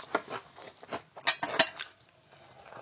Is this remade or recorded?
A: recorded